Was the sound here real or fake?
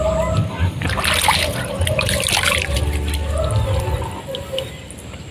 real